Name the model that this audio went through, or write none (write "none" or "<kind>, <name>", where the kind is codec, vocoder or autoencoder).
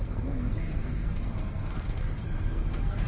codec, SNAC